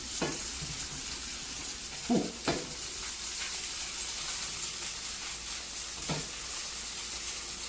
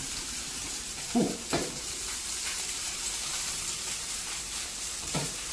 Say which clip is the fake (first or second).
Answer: second